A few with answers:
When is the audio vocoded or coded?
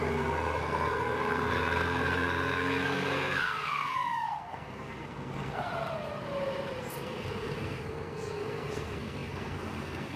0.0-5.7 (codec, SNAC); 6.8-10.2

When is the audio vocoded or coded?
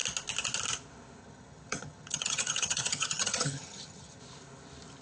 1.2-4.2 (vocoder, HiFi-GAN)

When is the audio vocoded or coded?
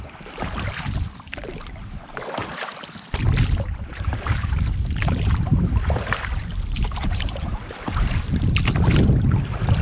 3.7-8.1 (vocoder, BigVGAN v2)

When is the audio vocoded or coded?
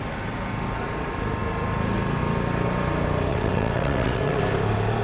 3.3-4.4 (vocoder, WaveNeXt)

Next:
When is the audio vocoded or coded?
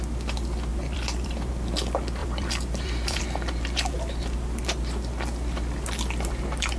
0.7-1.5 (vocoder, BigVGAN v2); 2.2-3.2